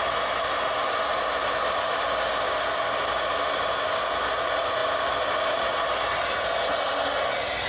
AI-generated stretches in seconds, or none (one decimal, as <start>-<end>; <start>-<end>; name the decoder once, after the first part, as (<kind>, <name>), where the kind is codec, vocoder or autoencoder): none